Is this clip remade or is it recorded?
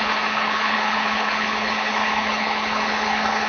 remade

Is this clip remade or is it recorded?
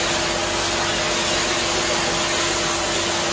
recorded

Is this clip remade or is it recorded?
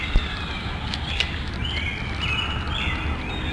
recorded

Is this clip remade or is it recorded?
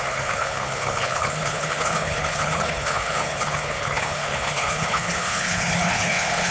remade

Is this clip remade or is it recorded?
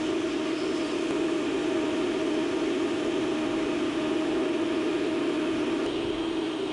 recorded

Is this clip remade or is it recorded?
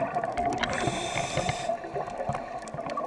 recorded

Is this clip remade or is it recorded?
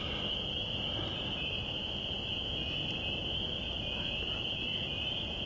recorded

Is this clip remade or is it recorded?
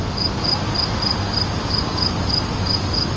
recorded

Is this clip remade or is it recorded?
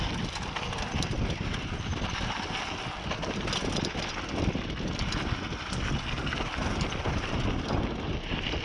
recorded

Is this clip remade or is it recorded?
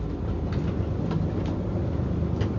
recorded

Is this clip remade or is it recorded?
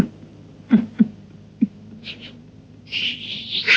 recorded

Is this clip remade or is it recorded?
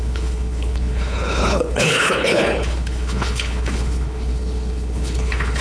remade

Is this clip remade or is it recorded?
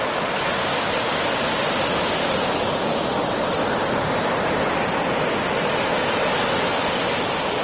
recorded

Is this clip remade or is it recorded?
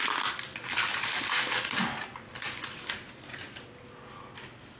recorded